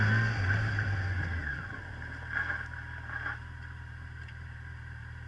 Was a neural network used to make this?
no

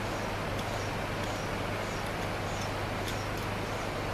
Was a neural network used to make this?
no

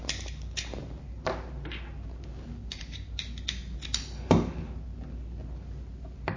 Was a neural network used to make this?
no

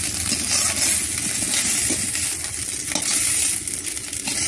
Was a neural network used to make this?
no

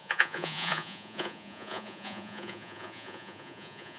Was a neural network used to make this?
yes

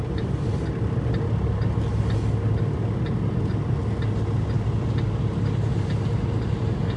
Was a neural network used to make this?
no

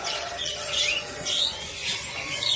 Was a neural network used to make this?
yes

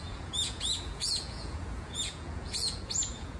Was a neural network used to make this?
yes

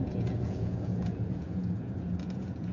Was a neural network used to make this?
yes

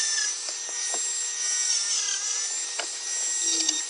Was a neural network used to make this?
no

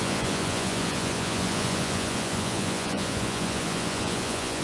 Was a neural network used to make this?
yes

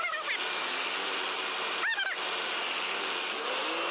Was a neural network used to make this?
no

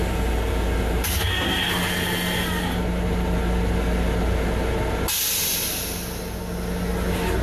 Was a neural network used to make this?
no